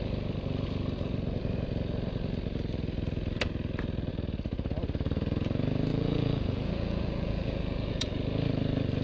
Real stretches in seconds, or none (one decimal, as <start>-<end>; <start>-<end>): 0.0-5.9; 8.1-9.0